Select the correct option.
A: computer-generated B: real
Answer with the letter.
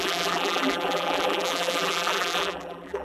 A